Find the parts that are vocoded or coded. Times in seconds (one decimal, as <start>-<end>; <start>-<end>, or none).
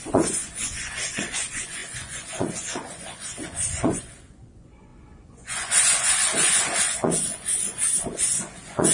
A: 0.0-8.9